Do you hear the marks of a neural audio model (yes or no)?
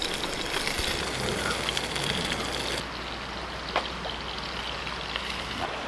no